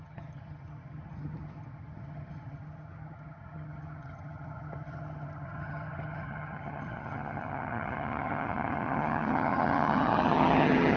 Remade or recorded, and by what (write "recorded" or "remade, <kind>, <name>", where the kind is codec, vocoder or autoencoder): remade, vocoder, HiFi-GAN